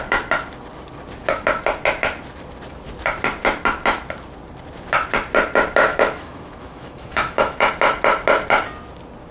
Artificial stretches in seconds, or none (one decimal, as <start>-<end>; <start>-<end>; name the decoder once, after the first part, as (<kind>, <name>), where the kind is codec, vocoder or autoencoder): 5.9-7.7 (autoencoder, DAC-VAE)